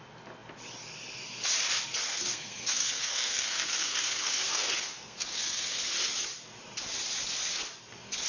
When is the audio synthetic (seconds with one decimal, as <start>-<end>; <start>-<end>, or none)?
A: 2.1-5.8